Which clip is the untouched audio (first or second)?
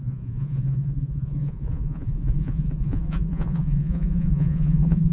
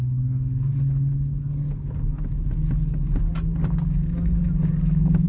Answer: second